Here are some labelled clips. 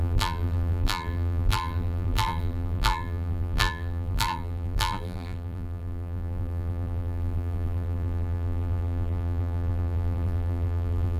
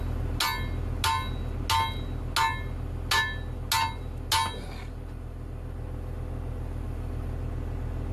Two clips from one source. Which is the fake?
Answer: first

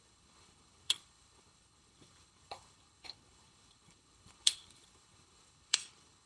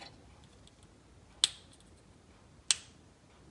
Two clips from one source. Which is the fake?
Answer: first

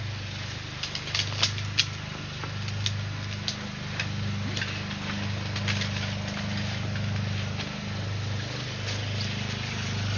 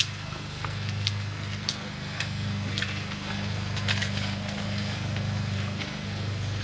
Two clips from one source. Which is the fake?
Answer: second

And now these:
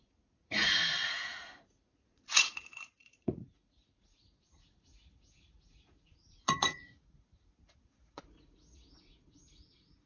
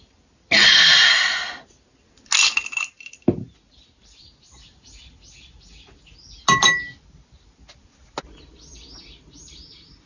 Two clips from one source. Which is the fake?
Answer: first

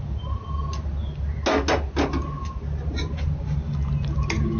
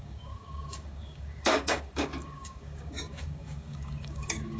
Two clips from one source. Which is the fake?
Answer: second